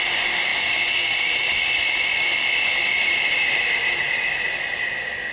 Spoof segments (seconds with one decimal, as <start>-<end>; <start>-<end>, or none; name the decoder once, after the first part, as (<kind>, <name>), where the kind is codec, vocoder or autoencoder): none